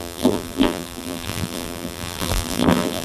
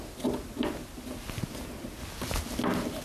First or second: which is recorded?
second